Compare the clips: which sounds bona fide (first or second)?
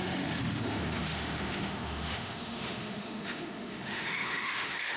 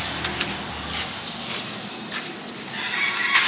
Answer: second